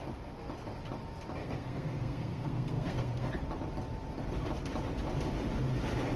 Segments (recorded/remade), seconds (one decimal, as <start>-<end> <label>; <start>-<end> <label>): 0.0-1.4 recorded; 1.4-3.3 remade; 3.3-6.2 recorded